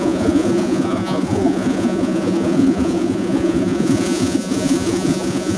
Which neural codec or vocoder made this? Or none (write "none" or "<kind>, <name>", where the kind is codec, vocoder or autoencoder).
vocoder, Vocos